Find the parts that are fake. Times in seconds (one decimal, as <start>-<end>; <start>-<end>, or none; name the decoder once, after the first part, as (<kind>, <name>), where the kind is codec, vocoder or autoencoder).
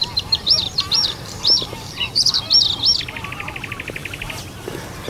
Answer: 0.0-2.4 (vocoder, BigVGAN v2)